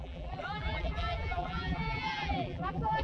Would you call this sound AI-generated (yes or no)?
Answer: yes